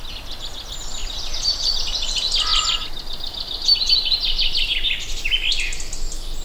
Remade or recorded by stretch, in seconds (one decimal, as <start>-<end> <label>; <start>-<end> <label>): 0.0-6.4 recorded